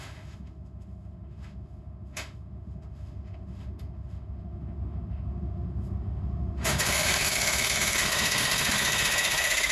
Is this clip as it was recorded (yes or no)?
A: no